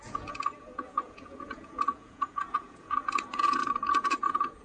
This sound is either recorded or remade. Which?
remade